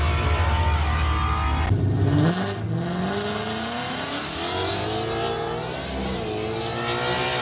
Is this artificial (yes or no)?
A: no